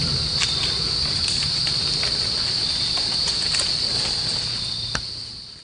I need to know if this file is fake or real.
real